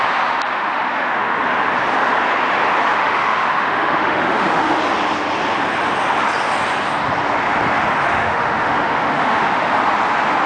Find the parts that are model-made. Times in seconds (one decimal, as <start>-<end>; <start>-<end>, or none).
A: 0.5-1.4; 2.9-4.8; 8.1-9.8